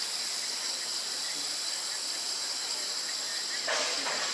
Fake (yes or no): no